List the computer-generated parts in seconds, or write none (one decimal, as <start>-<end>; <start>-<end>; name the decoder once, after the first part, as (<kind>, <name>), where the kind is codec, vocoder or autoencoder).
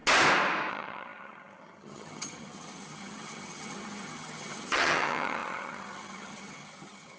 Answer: 0.7-7.2 (vocoder, HiFi-GAN)